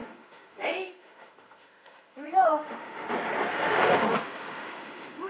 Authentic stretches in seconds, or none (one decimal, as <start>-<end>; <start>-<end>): 3.1-3.5